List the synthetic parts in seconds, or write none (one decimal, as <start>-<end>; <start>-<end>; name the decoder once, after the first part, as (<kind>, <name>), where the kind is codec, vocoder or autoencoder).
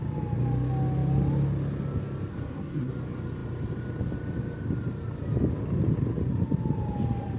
2.3-2.9 (codec, SNAC)